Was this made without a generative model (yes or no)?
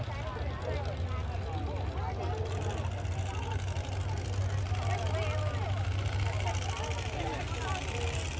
yes